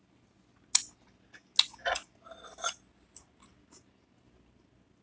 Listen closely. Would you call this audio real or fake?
real